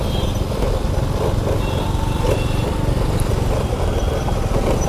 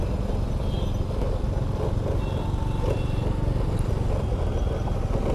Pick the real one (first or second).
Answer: second